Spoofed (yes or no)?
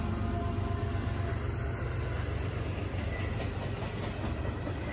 no